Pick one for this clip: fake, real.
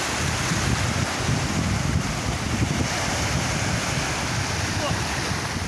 real